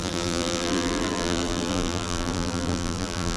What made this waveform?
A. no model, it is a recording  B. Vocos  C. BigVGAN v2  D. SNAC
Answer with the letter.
C